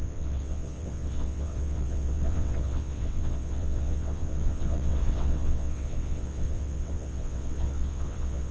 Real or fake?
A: fake